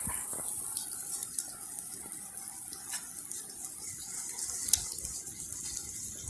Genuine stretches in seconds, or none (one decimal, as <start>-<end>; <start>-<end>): 0.0-6.3